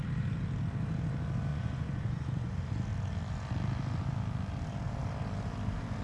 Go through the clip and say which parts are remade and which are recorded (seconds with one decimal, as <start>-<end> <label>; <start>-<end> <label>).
0.0-1.5 recorded; 1.5-2.5 remade; 2.5-6.0 recorded